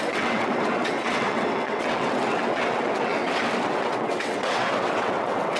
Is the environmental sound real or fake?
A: fake